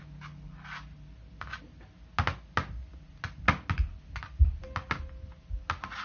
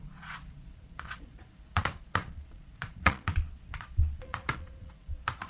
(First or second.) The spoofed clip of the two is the second